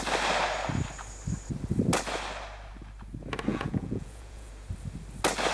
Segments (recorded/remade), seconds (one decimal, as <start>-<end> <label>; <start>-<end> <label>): 0.0-3.5 recorded; 3.5-4.5 remade; 4.5-5.5 recorded